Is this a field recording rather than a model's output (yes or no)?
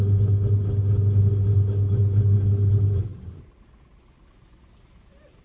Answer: yes